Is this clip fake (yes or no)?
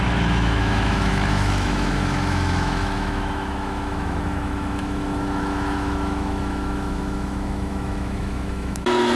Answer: yes